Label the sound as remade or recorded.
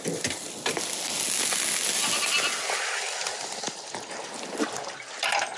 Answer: recorded